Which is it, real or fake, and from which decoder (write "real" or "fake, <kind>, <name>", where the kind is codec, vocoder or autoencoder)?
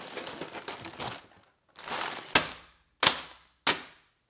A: real